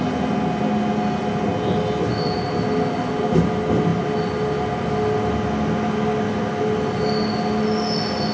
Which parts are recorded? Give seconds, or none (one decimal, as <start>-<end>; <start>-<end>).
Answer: 0.0-8.3